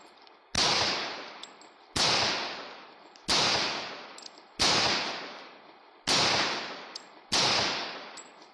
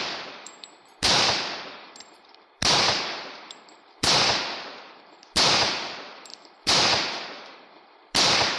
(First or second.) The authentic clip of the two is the first